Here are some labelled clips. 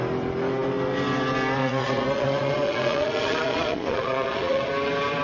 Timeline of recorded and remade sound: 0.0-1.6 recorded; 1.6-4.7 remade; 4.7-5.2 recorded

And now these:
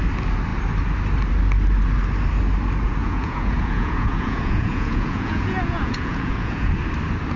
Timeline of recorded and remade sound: 0.0-3.0 recorded; 3.0-6.7 remade; 6.7-7.4 recorded

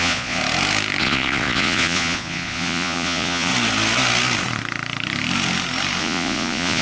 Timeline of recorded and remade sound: 0.0-0.4 remade; 0.4-1.0 recorded; 1.0-3.5 remade; 3.5-6.0 recorded; 6.0-6.8 remade

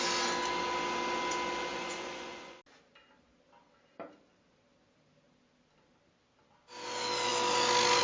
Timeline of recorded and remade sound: 0.0-1.7 recorded; 1.7-2.6 remade; 2.6-8.0 recorded

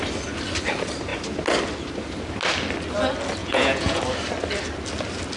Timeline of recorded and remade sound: 0.0-3.4 recorded; 3.4-4.0 remade; 4.0-5.4 recorded

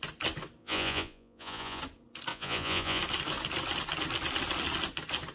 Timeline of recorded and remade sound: 0.0-0.6 recorded; 0.6-1.8 remade; 1.8-2.3 recorded; 2.3-3.0 remade; 3.0-5.3 recorded

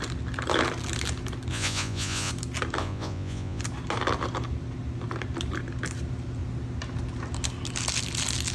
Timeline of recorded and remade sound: 0.0-1.5 recorded; 1.5-2.3 remade; 2.3-2.8 recorded; 2.8-3.6 remade; 3.6-8.5 recorded